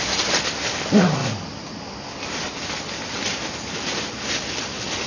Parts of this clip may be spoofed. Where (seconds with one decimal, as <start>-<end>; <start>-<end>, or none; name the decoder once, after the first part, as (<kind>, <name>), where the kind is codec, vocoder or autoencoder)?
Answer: none